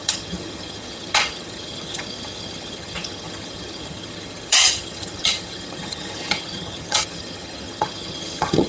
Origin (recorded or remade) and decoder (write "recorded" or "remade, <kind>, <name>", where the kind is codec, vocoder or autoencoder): remade, vocoder, HiFi-GAN